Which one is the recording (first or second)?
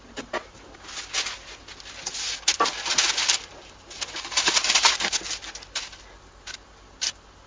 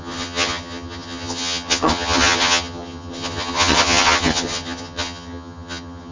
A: first